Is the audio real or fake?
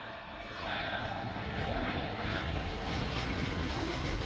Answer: fake